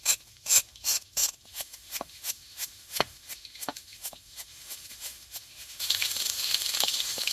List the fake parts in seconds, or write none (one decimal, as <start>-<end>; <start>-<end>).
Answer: 0.0-7.3